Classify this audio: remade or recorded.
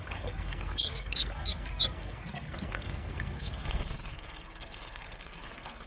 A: remade